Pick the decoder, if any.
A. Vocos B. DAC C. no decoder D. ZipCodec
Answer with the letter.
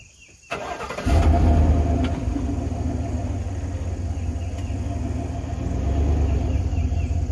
C